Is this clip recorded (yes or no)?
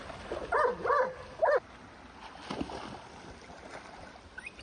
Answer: yes